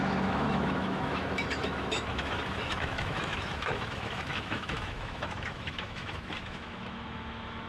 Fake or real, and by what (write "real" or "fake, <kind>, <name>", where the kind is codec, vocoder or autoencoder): fake, autoencoder, DAC-VAE